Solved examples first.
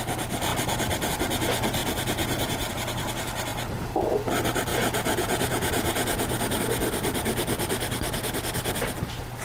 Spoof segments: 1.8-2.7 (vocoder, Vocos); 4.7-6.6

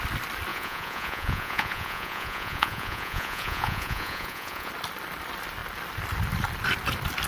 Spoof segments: 0.5-4.7 (vocoder, Vocos)